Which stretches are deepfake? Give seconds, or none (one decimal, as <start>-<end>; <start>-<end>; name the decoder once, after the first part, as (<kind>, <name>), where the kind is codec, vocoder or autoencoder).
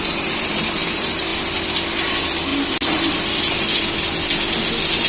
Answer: none